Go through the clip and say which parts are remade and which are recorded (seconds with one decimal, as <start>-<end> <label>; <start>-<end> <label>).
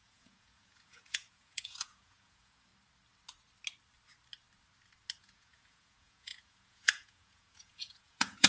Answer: 0.0-2.7 remade; 2.7-5.2 recorded; 5.2-8.5 remade